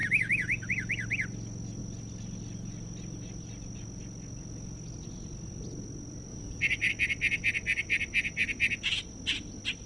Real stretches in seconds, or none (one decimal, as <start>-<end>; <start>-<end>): 0.7-6.3; 6.9-9.9